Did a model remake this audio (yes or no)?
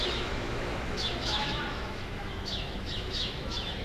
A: yes